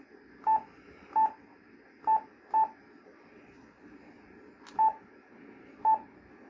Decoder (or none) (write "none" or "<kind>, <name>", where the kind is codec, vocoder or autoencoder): none